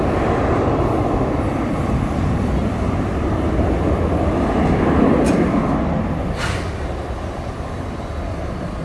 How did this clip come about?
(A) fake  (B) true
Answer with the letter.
B